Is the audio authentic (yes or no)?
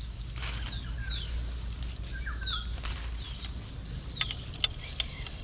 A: yes